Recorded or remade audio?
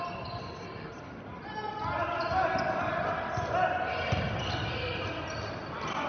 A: recorded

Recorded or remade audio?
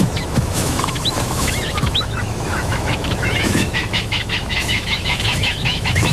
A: remade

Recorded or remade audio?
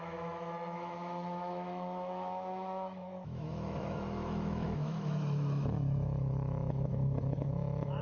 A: remade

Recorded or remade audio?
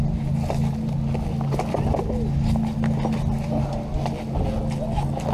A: recorded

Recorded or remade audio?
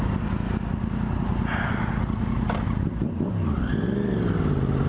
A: recorded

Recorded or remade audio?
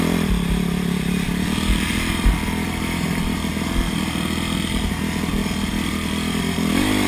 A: recorded